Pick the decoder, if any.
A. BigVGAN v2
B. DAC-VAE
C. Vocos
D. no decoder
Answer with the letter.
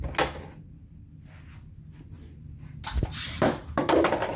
D